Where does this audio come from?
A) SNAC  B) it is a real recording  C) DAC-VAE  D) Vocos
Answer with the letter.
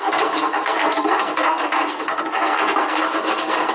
A